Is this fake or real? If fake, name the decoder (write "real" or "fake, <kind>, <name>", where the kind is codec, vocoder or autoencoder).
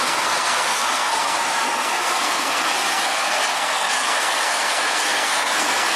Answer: fake, codec, SNAC